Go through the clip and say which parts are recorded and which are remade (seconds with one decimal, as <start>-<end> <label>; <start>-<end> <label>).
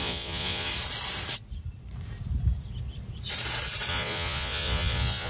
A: 0.0-0.7 remade; 0.7-3.9 recorded; 3.9-5.3 remade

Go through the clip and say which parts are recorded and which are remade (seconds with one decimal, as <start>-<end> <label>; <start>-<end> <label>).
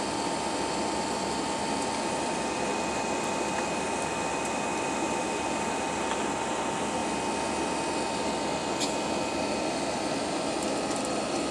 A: 0.0-11.5 recorded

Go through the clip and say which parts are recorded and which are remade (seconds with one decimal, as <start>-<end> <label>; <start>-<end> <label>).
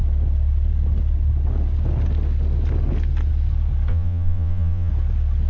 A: 0.0-3.9 recorded; 3.9-4.9 remade; 4.9-5.5 recorded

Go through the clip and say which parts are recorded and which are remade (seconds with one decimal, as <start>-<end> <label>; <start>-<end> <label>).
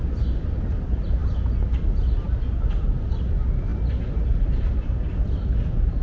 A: 0.0-6.0 recorded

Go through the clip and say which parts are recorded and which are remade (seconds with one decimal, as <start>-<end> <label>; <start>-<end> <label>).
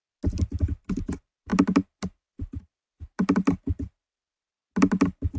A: 0.0-5.4 recorded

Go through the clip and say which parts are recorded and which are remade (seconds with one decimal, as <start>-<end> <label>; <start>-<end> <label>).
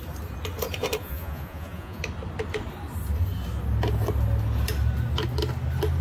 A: 0.0-1.0 recorded; 1.0-2.0 remade; 2.0-6.0 recorded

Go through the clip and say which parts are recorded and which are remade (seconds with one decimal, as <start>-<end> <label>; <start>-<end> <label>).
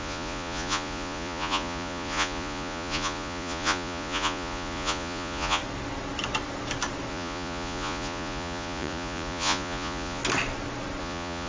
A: 0.0-5.6 remade; 5.6-7.1 recorded; 7.1-10.2 remade; 10.2-11.0 recorded; 11.0-11.5 remade